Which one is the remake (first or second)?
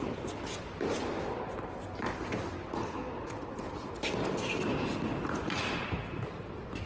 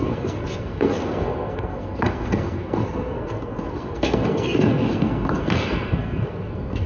second